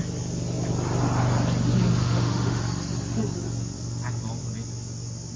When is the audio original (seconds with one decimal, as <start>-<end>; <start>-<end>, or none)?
0.0-2.0; 2.6-5.4